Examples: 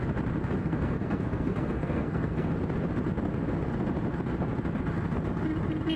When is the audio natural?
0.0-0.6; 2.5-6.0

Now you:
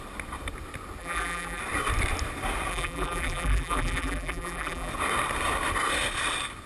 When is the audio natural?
0.0-1.0; 1.6-2.7; 4.9-6.7

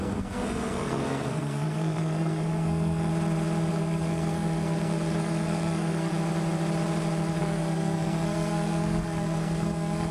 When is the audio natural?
3.1-3.7; 6.1-7.4

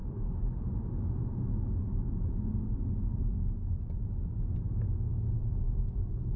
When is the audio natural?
0.6-6.4

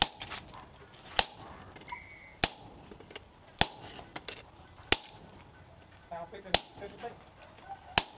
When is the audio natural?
0.0-8.2